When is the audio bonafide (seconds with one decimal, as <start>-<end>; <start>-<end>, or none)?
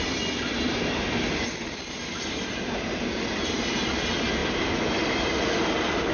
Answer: 0.0-6.1